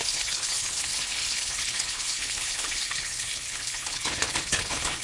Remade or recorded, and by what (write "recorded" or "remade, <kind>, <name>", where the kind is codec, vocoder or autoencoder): remade, codec, HILCodec